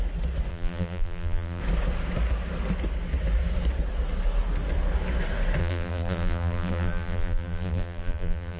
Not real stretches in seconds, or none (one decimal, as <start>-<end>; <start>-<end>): 0.5-1.6; 5.6-8.6